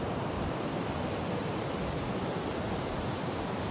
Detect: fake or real real